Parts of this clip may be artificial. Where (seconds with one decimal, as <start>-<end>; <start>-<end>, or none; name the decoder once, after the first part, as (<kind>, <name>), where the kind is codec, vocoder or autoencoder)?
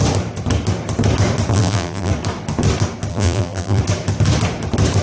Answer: 1.5-2.1 (vocoder, BigVGAN v2); 3.1-3.8